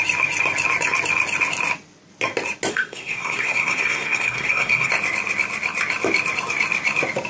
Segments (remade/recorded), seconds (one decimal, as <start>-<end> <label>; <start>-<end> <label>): 0.0-2.7 recorded; 2.7-4.9 remade; 4.9-7.3 recorded